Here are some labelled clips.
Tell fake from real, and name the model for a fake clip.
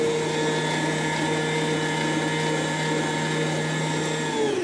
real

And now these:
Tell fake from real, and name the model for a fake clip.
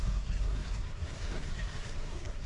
fake, codec, SNAC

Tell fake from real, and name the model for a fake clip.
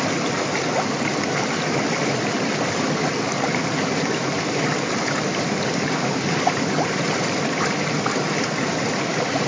real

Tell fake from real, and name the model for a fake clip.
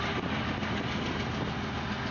real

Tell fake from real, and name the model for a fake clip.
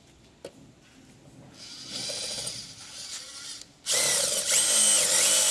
real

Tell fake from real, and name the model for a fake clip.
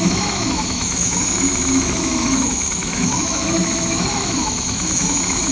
fake, autoencoder, DAC-VAE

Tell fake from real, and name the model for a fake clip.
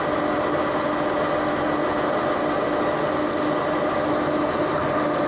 real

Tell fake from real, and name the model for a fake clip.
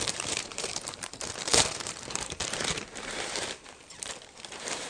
fake, vocoder, BigVGAN v2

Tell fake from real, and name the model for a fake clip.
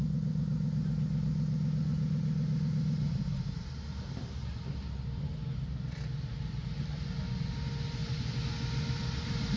real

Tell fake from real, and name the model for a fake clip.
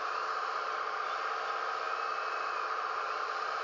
real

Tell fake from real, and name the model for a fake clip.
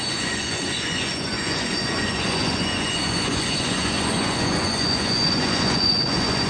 fake, vocoder, Vocos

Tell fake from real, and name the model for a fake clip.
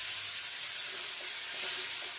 real